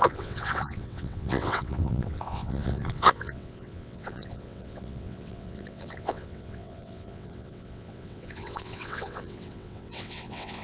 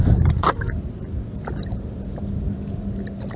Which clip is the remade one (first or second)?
first